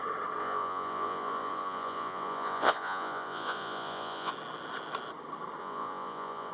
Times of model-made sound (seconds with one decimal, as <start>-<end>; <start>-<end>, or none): 0.4-4.3; 5.6-6.5